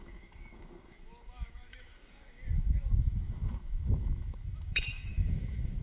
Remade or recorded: remade